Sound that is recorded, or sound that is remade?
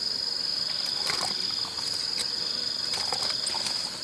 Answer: recorded